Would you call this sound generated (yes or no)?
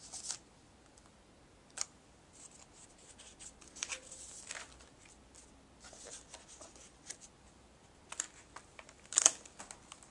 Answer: no